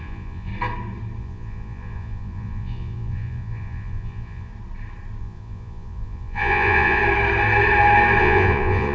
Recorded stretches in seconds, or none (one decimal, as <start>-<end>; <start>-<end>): 0.5-1.2; 4.5-5.2; 7.0-8.2

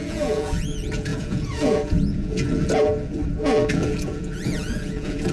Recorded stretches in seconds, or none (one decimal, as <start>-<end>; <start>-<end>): 3.2-3.7

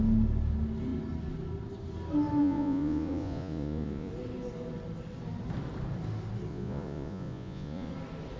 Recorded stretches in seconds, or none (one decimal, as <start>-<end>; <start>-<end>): 0.0-2.4; 4.1-6.5; 7.9-8.4

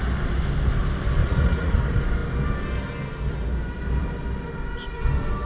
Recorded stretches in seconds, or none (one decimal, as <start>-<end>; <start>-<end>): 0.0-1.2; 1.8-5.5

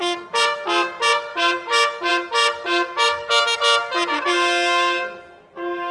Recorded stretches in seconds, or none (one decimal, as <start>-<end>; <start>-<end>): 0.0-5.9

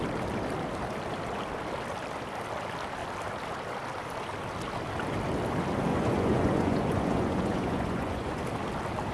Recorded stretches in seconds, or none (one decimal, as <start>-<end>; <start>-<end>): 0.0-5.9; 8.4-9.1

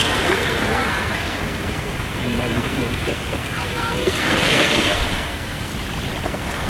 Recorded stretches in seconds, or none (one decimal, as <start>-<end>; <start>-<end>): 5.7-6.2

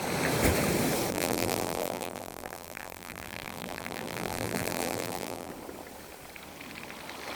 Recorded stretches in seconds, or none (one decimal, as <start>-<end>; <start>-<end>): 0.0-1.1; 5.5-7.4